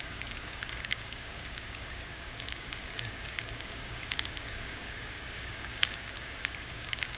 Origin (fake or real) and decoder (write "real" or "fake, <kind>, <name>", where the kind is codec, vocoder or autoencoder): fake, codec, DAC